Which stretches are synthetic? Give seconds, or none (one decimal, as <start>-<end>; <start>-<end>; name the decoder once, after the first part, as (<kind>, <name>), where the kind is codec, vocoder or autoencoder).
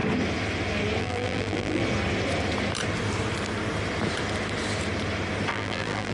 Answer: 1.0-1.8 (vocoder, BigVGAN v2); 5.5-6.1